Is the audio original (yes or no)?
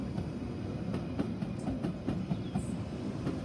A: yes